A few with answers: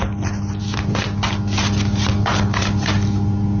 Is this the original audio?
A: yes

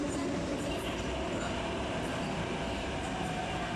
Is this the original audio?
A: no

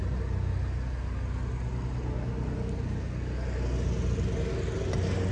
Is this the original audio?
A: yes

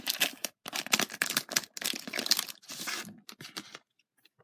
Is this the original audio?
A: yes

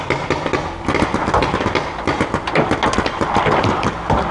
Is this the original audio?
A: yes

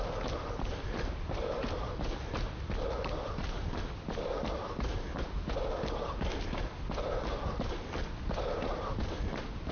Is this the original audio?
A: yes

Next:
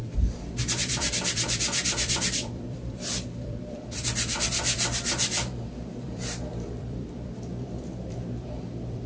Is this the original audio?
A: no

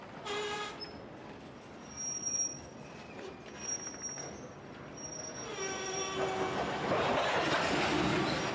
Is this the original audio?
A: yes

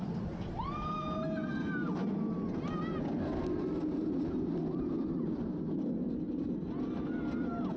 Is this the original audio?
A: yes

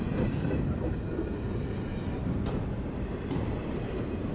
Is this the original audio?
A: no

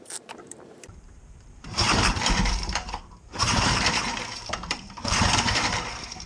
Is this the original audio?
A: no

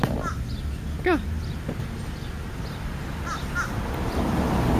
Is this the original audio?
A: yes